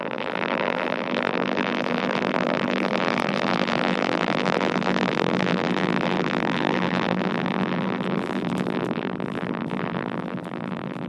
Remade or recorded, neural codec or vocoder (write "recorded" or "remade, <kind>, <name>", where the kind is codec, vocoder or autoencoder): remade, vocoder, BigVGAN v2